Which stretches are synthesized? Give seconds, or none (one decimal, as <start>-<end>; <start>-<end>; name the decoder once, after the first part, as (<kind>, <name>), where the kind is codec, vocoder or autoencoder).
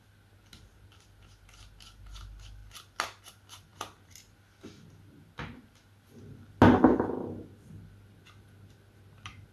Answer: none